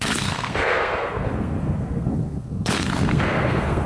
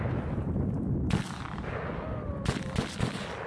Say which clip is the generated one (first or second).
first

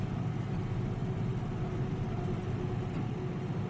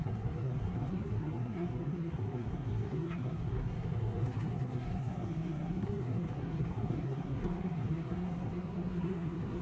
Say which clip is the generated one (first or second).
second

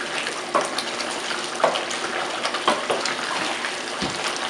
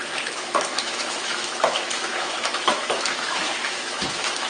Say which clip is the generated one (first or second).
second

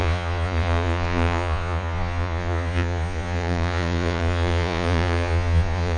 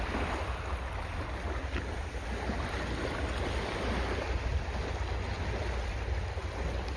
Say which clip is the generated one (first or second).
first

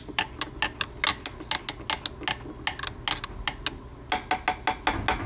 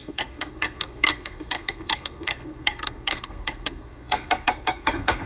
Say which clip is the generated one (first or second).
second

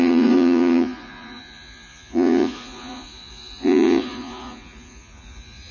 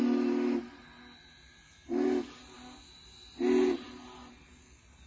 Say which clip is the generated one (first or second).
first